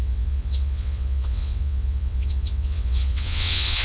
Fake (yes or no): yes